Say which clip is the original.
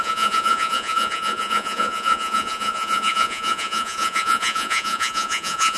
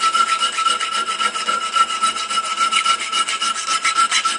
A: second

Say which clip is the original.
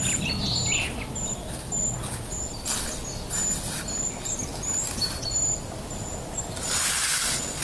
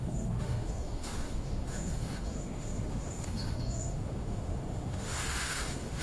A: first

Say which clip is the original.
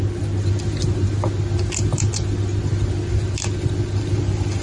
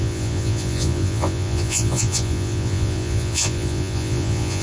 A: first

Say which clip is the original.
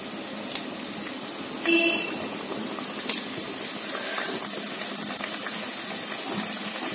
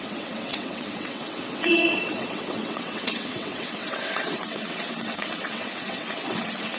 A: first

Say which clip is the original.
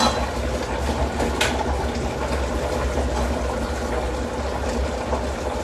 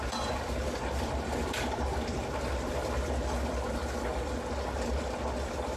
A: first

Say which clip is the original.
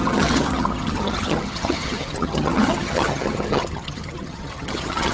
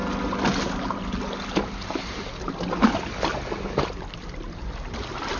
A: second